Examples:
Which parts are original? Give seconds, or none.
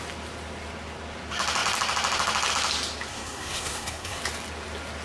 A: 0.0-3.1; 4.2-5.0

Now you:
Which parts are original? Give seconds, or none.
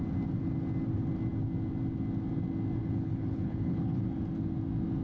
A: 0.0-2.8; 4.0-5.0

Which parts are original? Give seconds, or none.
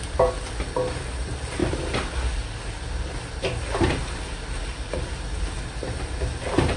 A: 0.0-6.8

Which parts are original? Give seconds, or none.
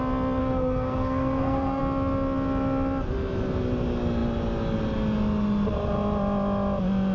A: 0.0-0.4; 1.8-7.1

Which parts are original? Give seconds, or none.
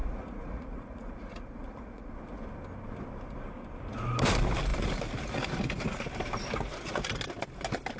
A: 2.1-8.0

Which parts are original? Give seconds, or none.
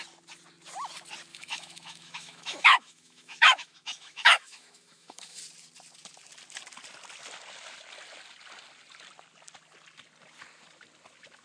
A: 0.0-1.3; 5.4-11.4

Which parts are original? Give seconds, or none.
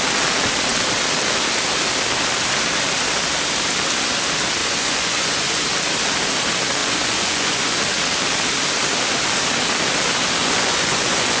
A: 0.0-4.6; 5.6-6.8; 7.8-10.4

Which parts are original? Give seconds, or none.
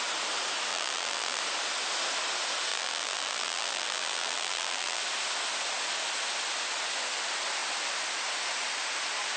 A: 0.0-0.7; 1.4-2.7; 5.0-9.4